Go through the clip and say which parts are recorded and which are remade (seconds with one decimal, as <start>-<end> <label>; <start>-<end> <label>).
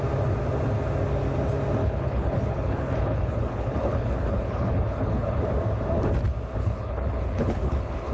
0.0-1.8 recorded; 1.8-5.4 remade; 5.4-6.6 recorded; 6.6-8.1 remade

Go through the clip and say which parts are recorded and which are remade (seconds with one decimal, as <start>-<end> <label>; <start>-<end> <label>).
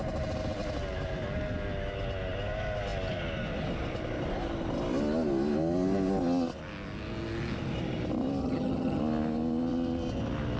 0.0-8.4 recorded; 8.4-9.0 remade; 9.0-10.6 recorded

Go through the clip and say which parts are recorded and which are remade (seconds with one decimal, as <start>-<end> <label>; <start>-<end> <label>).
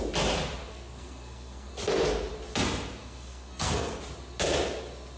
0.0-0.7 recorded; 0.7-1.7 remade; 1.7-3.0 recorded; 3.0-4.0 remade; 4.0-5.2 recorded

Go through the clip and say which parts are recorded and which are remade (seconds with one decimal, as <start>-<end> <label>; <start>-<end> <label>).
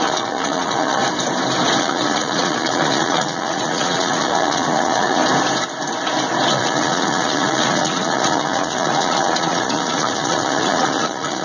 0.0-1.0 remade; 1.0-1.8 recorded; 1.8-5.2 remade; 5.2-6.5 recorded; 6.5-11.4 remade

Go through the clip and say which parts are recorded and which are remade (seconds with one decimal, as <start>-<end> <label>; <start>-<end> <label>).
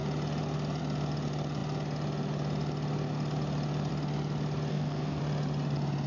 0.0-4.7 recorded; 4.7-5.2 remade; 5.2-6.1 recorded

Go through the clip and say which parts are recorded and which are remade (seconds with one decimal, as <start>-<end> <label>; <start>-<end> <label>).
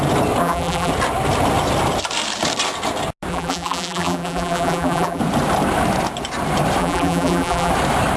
0.0-0.4 recorded; 0.4-0.9 remade; 0.9-3.3 recorded; 3.3-5.2 remade; 5.2-6.8 recorded; 6.8-7.7 remade; 7.7-8.2 recorded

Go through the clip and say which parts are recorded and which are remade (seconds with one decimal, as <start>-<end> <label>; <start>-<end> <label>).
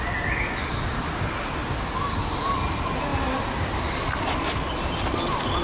0.0-5.6 recorded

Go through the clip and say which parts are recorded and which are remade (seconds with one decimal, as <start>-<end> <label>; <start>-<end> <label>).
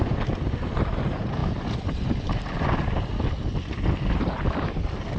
0.0-5.2 recorded